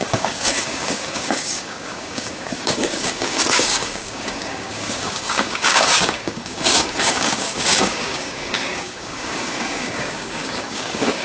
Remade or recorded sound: remade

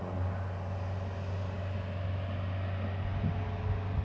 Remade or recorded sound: recorded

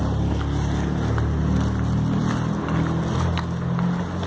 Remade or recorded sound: recorded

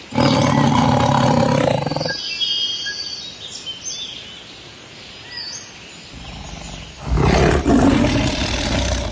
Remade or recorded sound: recorded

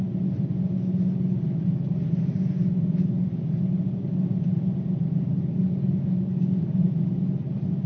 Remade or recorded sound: recorded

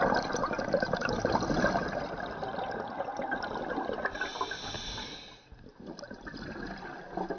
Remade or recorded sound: recorded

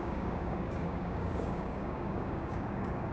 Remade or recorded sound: remade